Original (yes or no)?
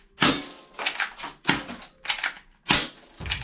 yes